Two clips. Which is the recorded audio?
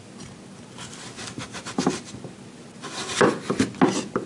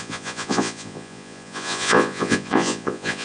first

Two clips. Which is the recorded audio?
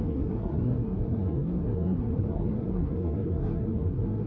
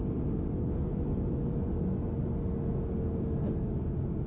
second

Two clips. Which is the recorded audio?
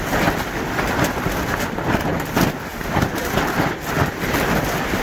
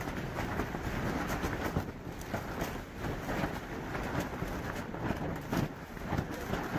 second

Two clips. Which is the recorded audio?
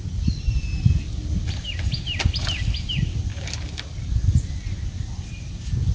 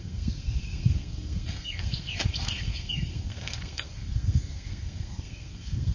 first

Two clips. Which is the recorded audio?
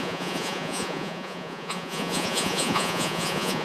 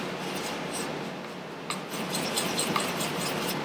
second